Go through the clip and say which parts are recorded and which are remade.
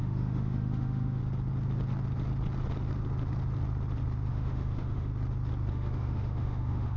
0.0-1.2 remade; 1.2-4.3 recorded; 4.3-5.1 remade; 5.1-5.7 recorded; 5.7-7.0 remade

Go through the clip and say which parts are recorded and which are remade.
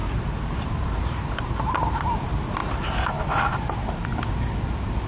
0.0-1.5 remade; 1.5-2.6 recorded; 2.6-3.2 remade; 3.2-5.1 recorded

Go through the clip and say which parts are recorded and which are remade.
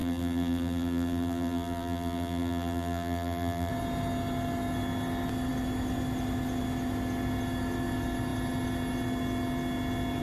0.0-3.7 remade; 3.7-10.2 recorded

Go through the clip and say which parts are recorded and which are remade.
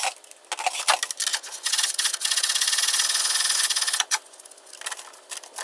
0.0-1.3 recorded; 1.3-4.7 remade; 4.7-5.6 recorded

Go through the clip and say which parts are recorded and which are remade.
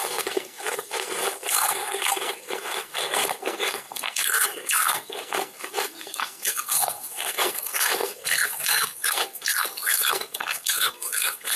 0.0-11.6 remade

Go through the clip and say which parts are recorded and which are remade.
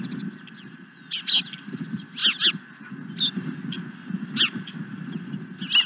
0.0-5.9 recorded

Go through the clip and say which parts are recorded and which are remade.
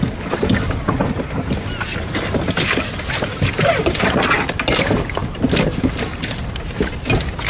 0.0-7.5 recorded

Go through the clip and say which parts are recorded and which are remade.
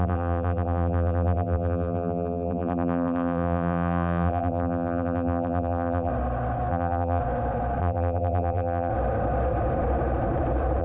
0.0-6.1 remade; 6.1-6.7 recorded; 6.7-7.2 remade; 7.2-7.8 recorded; 7.8-8.9 remade; 8.9-10.8 recorded